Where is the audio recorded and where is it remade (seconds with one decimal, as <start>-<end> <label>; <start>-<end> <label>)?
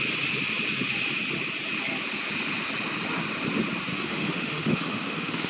0.0-3.9 recorded; 3.9-5.5 remade